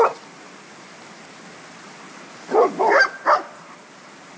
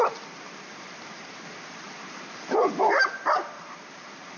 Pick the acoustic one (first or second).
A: first